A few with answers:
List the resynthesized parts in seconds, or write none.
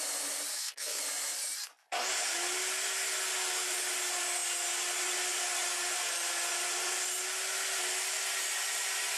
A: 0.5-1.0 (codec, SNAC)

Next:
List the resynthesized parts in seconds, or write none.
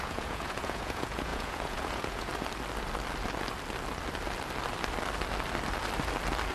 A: 0.0-2.3 (vocoder, Vocos)